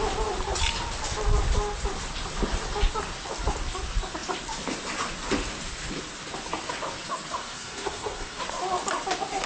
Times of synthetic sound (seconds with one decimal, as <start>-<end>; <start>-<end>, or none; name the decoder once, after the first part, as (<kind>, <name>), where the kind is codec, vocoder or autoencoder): 7.4-8.4 (codec, SNAC)